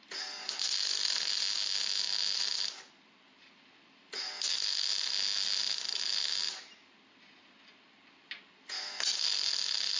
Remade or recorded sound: recorded